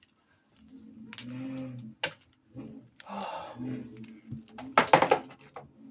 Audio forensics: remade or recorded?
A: recorded